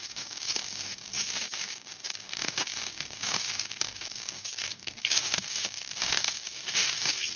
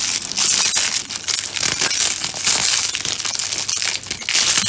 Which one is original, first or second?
second